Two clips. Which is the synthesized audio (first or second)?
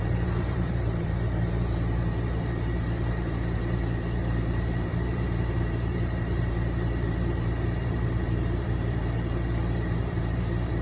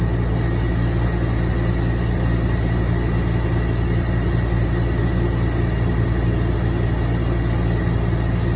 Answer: first